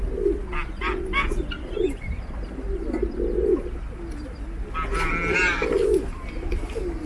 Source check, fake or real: real